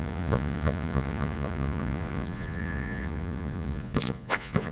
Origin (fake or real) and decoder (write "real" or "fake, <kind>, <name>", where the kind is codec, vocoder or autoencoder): fake, vocoder, Vocos